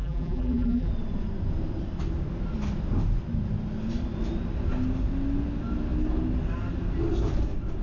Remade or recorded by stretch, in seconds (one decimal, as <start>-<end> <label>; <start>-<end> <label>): 0.0-0.9 remade; 0.9-7.8 recorded